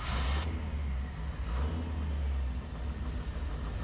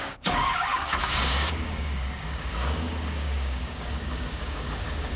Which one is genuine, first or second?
first